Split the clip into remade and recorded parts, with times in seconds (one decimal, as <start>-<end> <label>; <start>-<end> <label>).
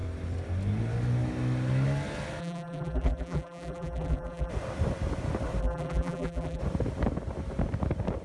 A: 0.0-2.4 recorded; 2.4-4.5 remade; 4.5-5.6 recorded; 5.6-6.6 remade; 6.6-8.2 recorded